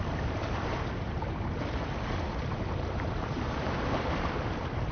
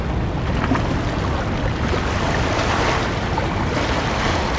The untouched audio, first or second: second